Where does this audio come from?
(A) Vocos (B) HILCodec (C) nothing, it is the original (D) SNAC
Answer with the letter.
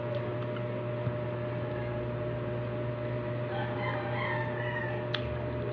C